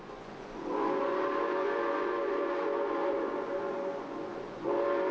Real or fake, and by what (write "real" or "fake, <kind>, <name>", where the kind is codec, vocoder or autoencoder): fake, vocoder, Vocos